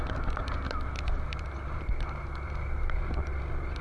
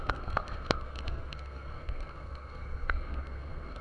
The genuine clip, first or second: first